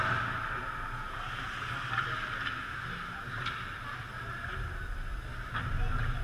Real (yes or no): yes